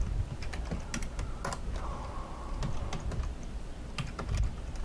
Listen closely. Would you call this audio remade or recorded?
recorded